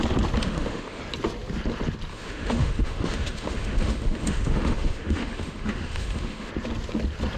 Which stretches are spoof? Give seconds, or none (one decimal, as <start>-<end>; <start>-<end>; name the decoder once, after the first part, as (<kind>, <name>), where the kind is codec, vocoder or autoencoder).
0.4-1.0 (autoencoder, DAC-VAE); 2.1-6.5